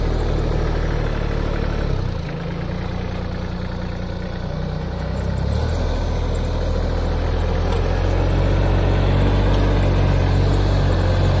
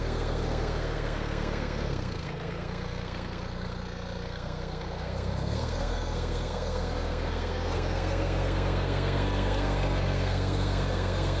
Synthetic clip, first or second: second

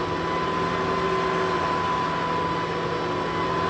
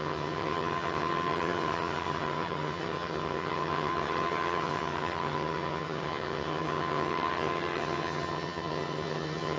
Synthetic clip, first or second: second